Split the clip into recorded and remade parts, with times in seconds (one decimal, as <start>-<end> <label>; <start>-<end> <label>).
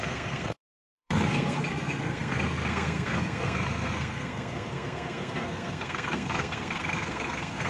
0.0-7.7 remade